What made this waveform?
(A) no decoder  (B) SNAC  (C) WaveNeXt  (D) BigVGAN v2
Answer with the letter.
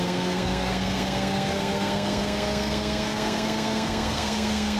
B